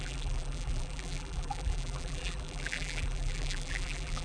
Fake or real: fake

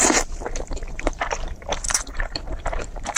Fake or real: fake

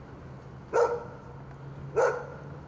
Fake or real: real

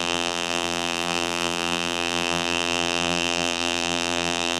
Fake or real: fake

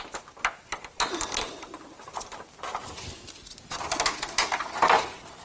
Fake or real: real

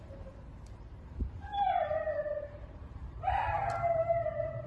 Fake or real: fake